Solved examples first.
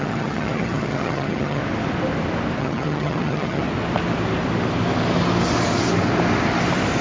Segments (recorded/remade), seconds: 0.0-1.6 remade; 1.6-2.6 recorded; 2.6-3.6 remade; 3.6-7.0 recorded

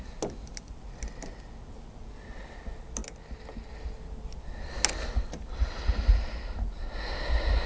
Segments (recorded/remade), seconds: 0.0-7.7 recorded

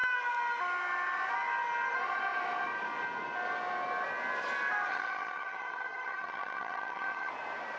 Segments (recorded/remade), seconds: 0.0-4.9 recorded; 4.9-7.3 remade; 7.3-7.8 recorded